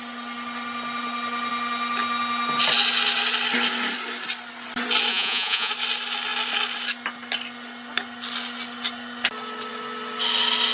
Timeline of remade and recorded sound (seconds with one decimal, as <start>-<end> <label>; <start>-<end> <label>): 0.0-5.1 recorded; 5.1-5.7 remade; 5.7-10.7 recorded